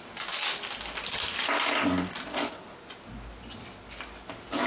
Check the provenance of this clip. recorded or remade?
recorded